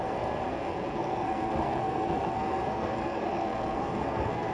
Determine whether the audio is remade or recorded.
remade